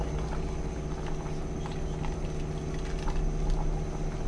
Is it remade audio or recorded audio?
recorded